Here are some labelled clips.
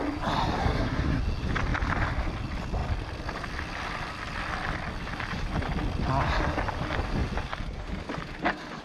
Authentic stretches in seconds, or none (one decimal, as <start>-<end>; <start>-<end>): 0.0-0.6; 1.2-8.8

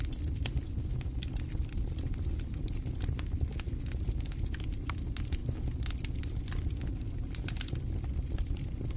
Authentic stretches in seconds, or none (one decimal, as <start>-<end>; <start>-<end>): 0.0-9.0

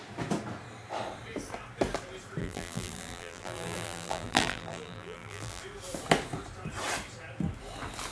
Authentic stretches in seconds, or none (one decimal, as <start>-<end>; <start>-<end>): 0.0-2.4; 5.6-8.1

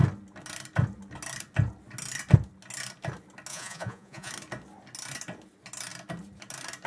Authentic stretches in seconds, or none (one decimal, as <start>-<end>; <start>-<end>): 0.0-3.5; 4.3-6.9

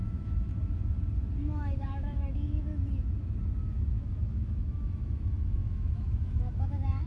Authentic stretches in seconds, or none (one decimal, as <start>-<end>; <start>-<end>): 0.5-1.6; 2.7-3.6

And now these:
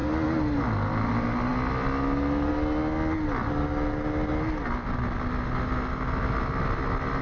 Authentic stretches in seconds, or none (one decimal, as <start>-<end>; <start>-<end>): 0.0-7.2

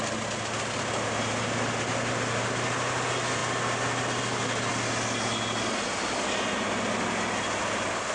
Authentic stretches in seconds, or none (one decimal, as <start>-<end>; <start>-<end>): 0.0-8.1

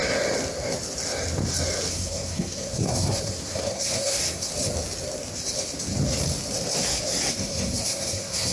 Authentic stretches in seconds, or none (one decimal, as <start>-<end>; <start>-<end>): 0.0-1.9; 4.5-7.3